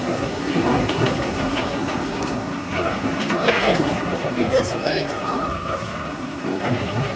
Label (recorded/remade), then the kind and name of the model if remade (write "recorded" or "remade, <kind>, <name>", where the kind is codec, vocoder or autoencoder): remade, codec, SNAC